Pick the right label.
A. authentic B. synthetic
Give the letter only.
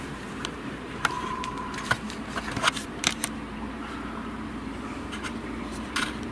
B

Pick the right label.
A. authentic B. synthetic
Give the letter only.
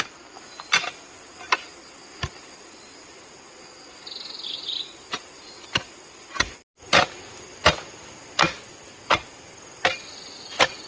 A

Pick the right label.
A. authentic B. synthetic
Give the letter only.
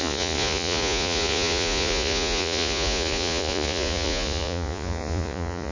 B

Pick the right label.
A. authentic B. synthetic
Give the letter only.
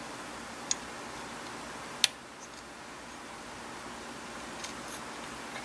A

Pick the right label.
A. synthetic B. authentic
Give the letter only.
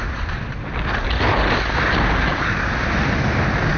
B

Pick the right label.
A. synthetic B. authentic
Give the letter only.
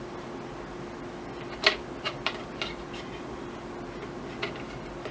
B